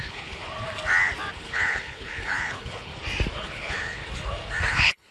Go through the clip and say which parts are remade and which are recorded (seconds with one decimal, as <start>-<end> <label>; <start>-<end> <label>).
0.0-0.4 remade; 0.4-1.3 recorded; 1.3-2.9 remade; 2.9-3.4 recorded; 3.4-4.0 remade; 4.0-4.6 recorded; 4.6-5.1 remade